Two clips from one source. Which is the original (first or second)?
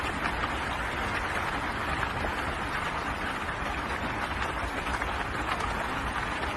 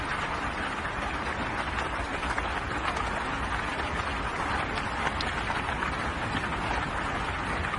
second